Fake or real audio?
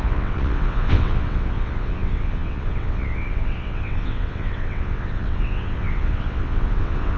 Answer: fake